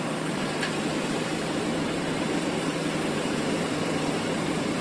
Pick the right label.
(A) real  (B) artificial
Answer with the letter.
B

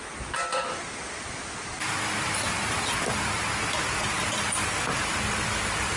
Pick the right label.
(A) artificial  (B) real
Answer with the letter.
B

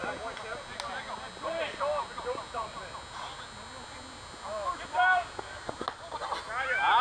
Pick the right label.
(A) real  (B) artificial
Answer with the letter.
A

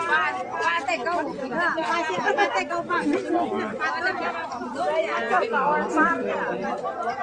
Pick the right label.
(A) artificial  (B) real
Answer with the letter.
B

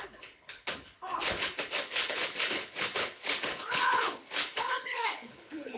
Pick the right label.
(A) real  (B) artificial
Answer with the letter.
B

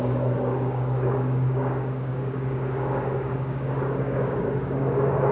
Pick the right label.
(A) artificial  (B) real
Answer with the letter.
A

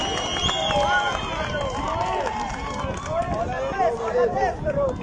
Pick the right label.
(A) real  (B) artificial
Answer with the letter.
A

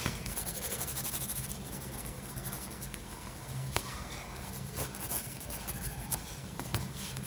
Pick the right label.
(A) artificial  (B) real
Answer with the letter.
A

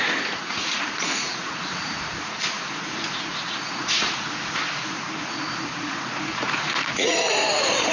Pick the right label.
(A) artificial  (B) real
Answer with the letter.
A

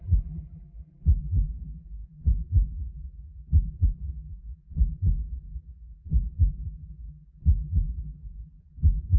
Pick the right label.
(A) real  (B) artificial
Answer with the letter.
B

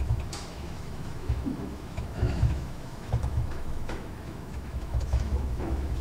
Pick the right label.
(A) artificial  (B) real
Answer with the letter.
A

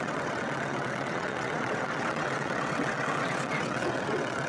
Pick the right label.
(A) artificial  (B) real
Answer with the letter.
A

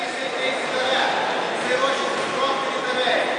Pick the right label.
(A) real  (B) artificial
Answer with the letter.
A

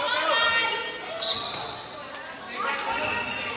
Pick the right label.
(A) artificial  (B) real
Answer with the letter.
B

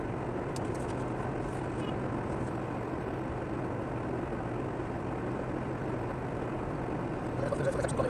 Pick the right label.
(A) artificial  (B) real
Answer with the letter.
B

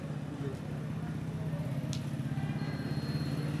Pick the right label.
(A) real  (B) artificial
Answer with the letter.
A